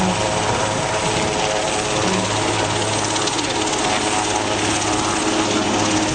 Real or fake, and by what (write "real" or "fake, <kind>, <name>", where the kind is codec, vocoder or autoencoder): real